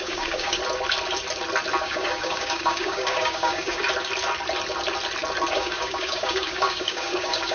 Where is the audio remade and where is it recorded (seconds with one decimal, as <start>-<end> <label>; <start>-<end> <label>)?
0.0-0.6 remade; 0.6-1.8 recorded; 1.8-3.8 remade; 3.8-5.5 recorded; 5.5-7.5 remade